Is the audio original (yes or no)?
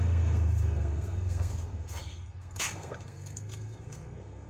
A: no